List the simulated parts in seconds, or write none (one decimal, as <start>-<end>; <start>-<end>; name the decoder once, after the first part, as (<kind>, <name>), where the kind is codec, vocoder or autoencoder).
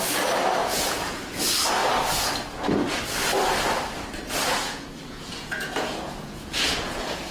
0.6-1.4 (vocoder, Vocos); 4.5-7.3